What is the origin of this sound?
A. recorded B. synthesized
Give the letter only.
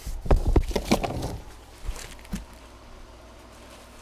A